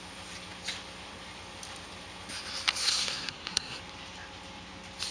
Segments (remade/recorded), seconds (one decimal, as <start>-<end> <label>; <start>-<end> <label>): 0.0-2.8 recorded; 2.8-3.8 remade; 3.8-5.1 recorded